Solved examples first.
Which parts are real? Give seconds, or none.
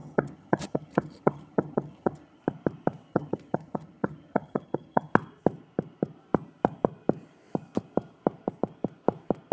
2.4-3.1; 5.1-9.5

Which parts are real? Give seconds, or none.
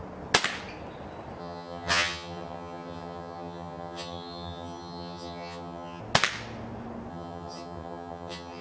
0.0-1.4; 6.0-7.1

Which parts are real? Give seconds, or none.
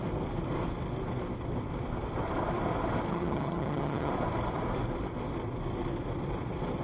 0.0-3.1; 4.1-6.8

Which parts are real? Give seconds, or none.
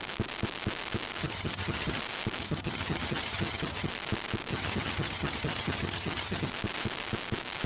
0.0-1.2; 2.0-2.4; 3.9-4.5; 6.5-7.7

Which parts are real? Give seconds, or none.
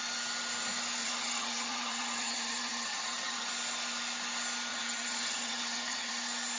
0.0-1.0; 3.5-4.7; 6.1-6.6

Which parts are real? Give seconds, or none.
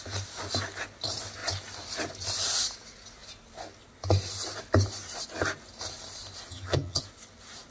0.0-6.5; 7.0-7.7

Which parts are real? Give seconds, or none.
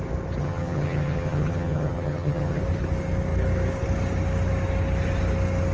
0.0-0.4; 2.6-5.7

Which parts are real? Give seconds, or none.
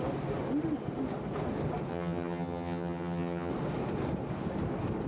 0.0-1.9; 3.5-5.1